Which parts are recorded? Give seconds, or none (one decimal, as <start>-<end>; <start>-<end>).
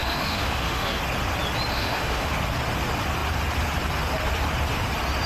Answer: 1.0-1.7; 2.3-5.3